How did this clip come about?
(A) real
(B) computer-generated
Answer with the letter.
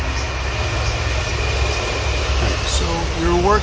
A